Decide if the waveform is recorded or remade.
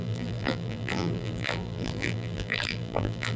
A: remade